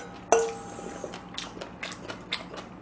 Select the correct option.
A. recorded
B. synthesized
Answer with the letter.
A